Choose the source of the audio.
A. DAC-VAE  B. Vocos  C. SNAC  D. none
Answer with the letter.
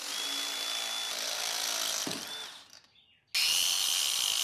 D